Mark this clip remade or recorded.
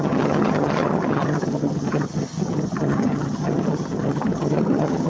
remade